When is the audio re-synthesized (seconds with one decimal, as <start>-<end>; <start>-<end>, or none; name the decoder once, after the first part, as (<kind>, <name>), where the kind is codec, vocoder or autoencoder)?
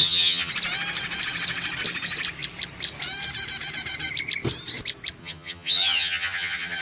0.0-0.5 (vocoder, HiFi-GAN); 5.2-6.8